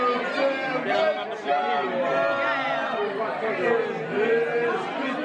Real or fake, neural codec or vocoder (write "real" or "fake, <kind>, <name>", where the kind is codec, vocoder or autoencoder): real